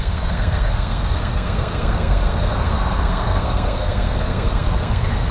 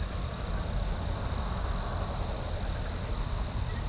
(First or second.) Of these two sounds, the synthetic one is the first